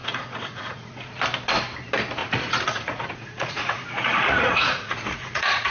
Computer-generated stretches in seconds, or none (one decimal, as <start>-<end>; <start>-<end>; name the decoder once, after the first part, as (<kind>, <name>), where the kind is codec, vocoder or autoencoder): 0.0-1.2 (vocoder, Vocos); 2.2-5.7